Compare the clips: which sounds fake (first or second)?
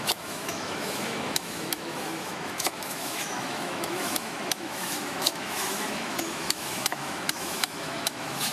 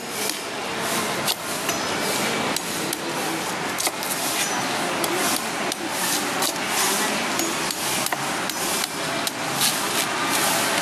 first